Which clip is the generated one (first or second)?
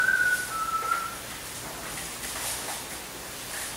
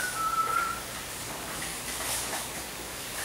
second